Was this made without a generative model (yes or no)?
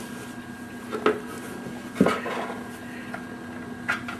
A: yes